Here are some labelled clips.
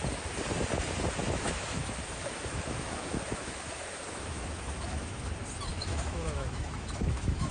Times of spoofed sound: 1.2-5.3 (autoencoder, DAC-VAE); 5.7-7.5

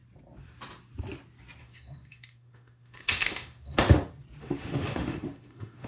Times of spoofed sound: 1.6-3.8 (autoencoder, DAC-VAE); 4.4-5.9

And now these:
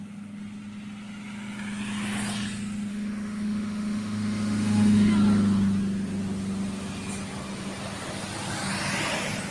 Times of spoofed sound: 2.9-5.1 (autoencoder, DAC-VAE)

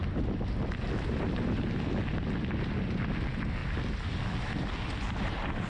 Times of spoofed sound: none

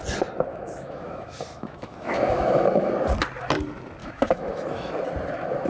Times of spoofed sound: 0.5-2.9 (autoencoder, DAC-VAE); 4.0-4.9

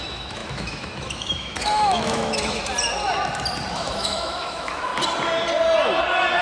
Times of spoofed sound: 0.0-2.6 (autoencoder, DAC-VAE); 3.7-4.9